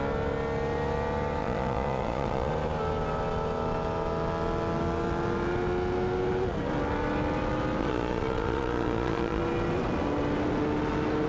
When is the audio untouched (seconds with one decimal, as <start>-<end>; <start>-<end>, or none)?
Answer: 0.0-1.4; 2.5-7.8; 9.4-11.3